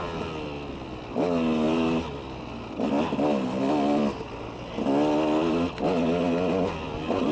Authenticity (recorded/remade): recorded